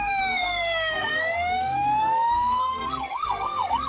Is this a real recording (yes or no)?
no